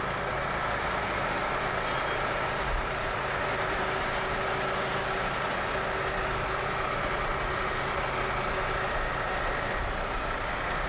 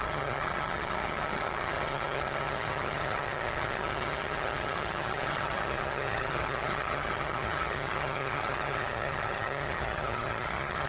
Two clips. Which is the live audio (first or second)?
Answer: first